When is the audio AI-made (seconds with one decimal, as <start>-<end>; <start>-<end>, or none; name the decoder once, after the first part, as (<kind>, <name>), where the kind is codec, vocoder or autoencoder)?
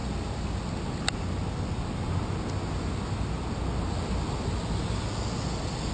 none